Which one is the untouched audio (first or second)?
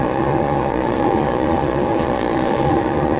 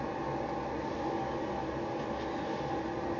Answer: second